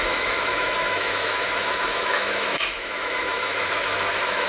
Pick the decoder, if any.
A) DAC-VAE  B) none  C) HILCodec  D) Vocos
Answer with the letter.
A